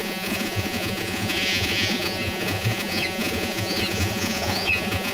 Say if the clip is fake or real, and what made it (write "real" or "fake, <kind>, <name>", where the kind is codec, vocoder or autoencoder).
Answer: fake, vocoder, Vocos